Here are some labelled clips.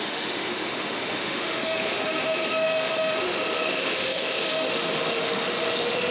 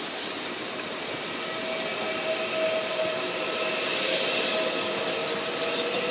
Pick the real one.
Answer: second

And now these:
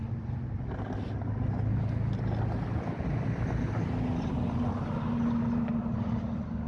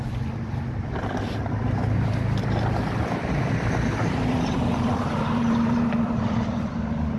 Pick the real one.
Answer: first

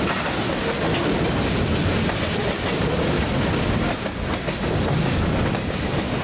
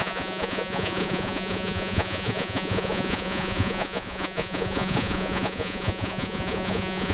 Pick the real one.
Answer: first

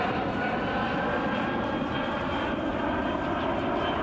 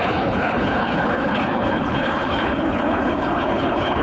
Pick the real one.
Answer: first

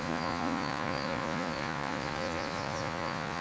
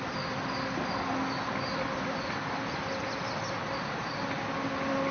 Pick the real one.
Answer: second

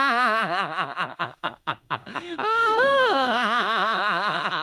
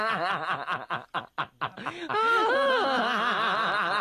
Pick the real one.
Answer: second